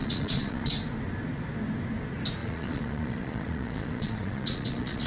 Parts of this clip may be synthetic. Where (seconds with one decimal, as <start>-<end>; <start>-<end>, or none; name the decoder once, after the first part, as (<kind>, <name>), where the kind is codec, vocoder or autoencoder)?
0.0-0.7 (vocoder, Vocos); 2.4-5.1